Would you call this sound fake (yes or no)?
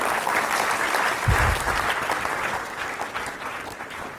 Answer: no